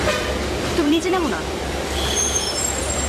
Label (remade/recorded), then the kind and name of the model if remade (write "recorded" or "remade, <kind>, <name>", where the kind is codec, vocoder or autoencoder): remade, vocoder, BigVGAN v2